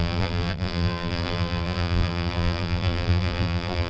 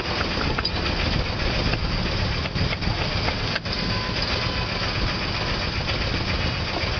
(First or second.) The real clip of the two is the second